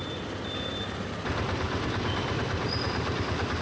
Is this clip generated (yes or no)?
yes